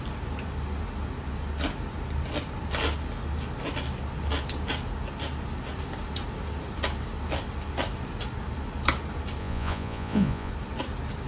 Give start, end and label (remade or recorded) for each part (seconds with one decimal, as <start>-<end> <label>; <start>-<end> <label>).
0.0-9.4 recorded; 9.4-10.5 remade; 10.5-11.3 recorded